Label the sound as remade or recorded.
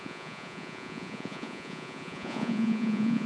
remade